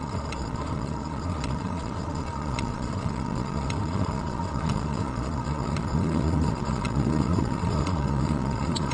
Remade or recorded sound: remade